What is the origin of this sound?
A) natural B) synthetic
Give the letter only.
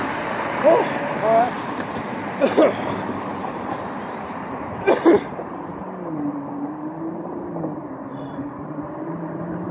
B